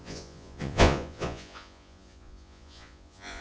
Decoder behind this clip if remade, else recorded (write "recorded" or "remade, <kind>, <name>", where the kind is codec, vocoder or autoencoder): remade, vocoder, Vocos